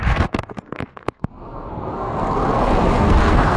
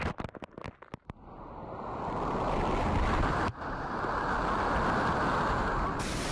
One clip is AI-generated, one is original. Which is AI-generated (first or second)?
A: first